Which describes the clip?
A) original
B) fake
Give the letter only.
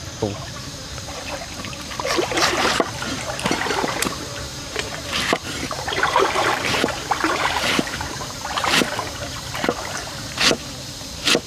B